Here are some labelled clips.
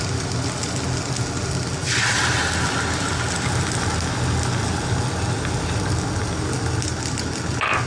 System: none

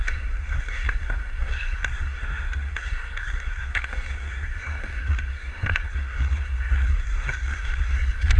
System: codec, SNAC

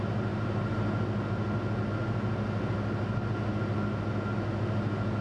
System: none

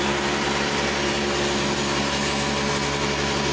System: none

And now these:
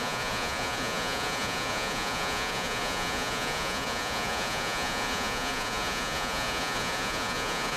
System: vocoder, Vocos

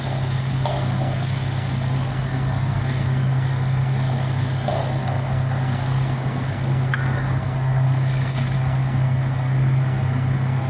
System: codec, SNAC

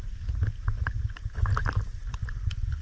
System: none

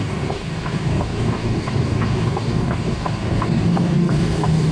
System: codec, DAC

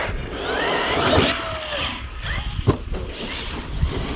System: none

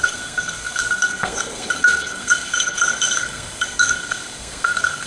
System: codec, SNAC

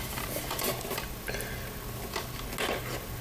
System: none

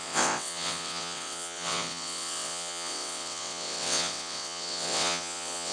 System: vocoder, WaveNeXt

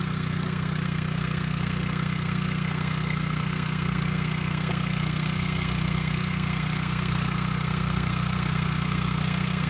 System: codec, SNAC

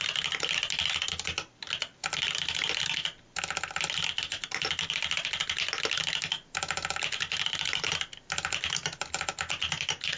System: none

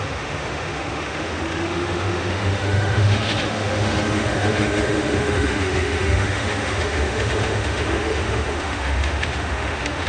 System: autoencoder, DAC-VAE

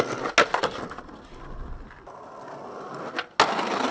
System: none